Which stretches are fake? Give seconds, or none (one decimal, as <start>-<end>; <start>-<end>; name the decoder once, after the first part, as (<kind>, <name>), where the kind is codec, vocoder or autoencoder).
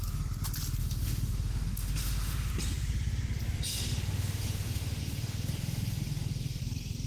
0.8-2.5 (autoencoder, DAC-VAE); 3.7-6.6